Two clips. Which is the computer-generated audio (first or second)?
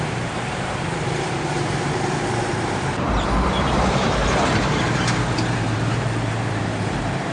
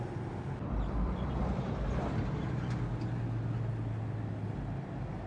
first